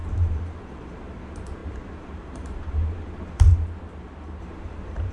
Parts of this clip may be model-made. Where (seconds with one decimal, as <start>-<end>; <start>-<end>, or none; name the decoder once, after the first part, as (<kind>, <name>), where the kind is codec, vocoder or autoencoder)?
0.0-3.5 (vocoder, BigVGAN v2); 4.4-5.1